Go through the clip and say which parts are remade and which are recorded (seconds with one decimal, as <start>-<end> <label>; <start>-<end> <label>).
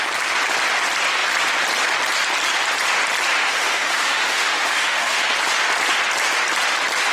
0.0-3.4 recorded; 3.4-5.2 remade; 5.2-7.1 recorded